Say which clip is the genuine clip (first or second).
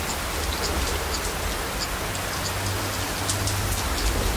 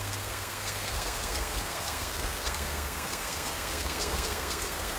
first